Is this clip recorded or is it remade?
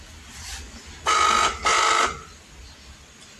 recorded